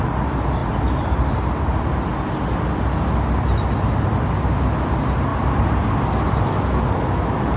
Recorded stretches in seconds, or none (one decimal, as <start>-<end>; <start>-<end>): 0.0-5.3; 6.0-7.6